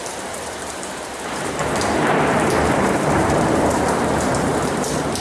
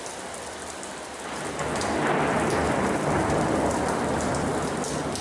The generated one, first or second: first